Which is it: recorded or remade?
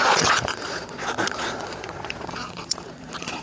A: remade